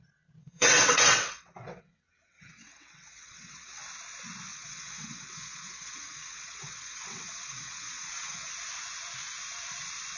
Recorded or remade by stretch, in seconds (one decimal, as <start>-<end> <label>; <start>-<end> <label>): 0.0-0.4 recorded; 0.4-3.8 remade; 3.8-4.5 recorded; 4.5-8.5 remade; 8.5-10.2 recorded